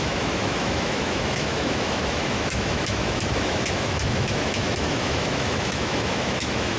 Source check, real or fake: fake